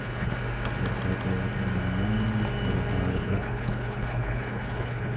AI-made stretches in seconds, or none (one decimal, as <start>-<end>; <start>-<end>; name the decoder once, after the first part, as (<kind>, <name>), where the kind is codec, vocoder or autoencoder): 0.0-0.4 (codec, HILCodec); 3.1-5.2